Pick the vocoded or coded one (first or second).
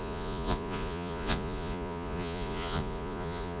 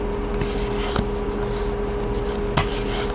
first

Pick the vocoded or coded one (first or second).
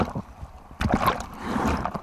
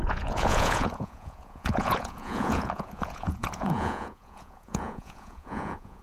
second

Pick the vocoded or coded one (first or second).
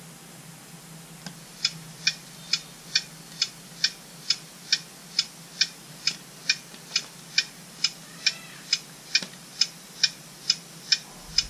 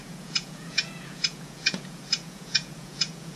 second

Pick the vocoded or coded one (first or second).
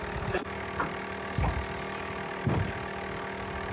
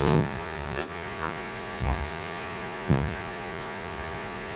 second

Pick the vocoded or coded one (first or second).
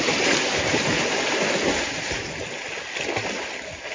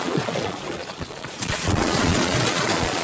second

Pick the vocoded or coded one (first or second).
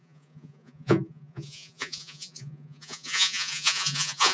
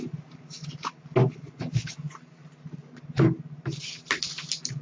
first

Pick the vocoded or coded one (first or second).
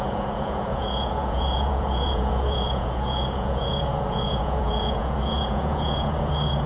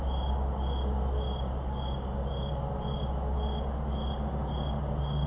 first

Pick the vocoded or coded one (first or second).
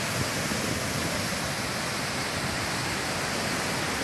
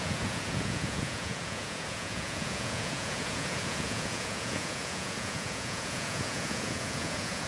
second